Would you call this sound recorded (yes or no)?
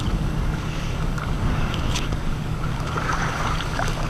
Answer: no